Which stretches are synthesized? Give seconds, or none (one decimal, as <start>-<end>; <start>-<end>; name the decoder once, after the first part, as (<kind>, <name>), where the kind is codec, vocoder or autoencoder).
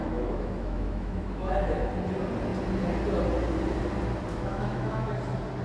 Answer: 0.0-1.9 (autoencoder, DAC-VAE); 4.3-5.1